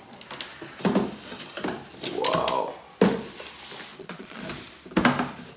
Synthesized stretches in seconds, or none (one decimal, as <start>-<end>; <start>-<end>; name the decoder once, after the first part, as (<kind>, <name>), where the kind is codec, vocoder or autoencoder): 3.9-4.4 (vocoder, Vocos)